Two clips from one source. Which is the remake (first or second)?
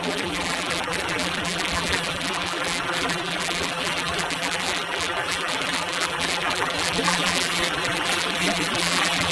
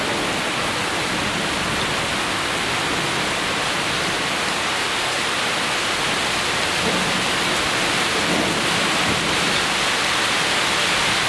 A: first